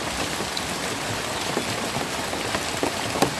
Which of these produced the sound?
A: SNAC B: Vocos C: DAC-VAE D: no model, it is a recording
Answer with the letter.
D